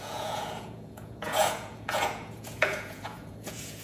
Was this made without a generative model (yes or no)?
no